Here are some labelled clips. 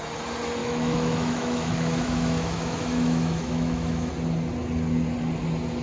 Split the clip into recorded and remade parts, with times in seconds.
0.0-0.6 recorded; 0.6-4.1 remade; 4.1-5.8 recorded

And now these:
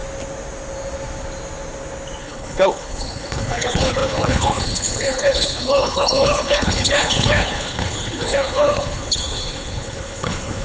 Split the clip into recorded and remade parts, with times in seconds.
0.0-2.2 recorded; 2.2-10.6 remade

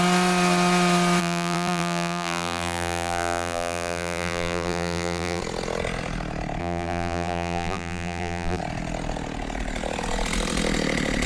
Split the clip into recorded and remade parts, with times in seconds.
0.0-1.2 recorded; 1.2-5.4 remade; 5.4-6.6 recorded; 6.6-8.6 remade; 8.6-11.3 recorded

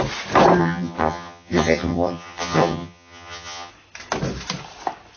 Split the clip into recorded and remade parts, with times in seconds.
0.0-0.6 recorded; 0.6-3.7 remade; 3.7-5.2 recorded